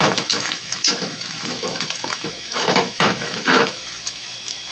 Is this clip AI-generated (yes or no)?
yes